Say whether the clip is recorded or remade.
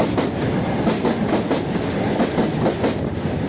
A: recorded